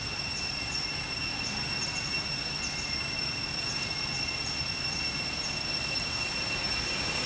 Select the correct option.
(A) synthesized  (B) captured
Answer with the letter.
B